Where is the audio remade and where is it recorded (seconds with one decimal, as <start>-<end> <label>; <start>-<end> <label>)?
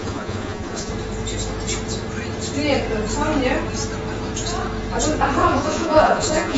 0.0-0.9 remade; 0.9-5.4 recorded; 5.4-6.6 remade